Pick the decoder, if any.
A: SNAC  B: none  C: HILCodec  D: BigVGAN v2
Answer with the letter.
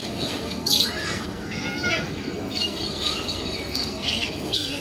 A